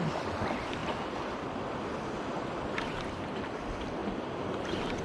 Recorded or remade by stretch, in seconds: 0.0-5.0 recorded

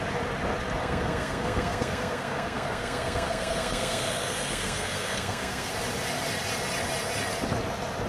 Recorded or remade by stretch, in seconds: 0.0-0.8 recorded; 0.8-5.7 remade; 5.7-8.1 recorded

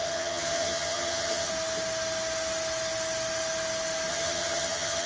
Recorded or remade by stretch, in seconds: 0.0-1.5 remade; 1.5-4.1 recorded; 4.1-5.1 remade

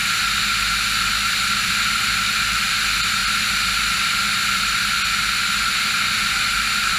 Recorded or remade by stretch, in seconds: 0.0-7.0 recorded

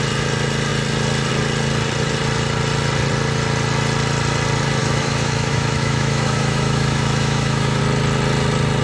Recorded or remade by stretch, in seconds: 0.0-4.8 recorded; 4.8-7.8 remade; 7.8-8.8 recorded